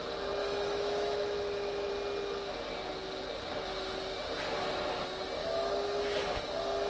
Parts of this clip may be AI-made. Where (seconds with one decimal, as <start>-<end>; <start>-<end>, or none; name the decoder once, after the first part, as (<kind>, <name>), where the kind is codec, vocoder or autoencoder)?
0.4-1.9 (autoencoder, DAC-VAE); 5.4-6.0